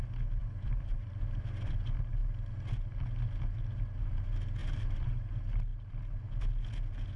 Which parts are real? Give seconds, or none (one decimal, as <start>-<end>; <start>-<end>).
0.0-0.4; 1.2-4.6; 5.3-7.2